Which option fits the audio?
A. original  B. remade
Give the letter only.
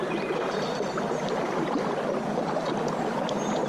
A